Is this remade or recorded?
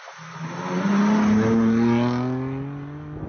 recorded